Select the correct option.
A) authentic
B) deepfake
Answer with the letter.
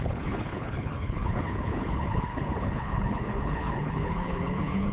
B